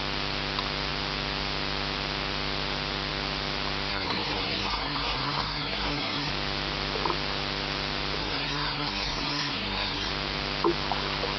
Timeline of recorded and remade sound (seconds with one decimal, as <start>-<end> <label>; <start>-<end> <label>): 0.0-3.9 recorded; 3.9-6.3 remade; 6.3-8.2 recorded; 8.2-10.1 remade; 10.1-11.4 recorded